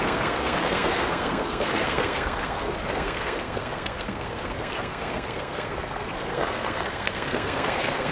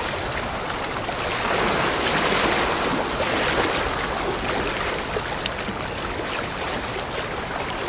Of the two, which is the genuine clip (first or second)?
second